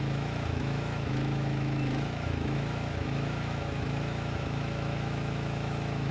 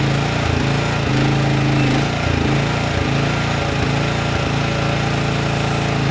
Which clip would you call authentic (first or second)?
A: second